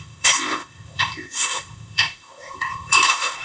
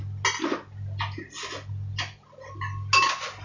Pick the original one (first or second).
second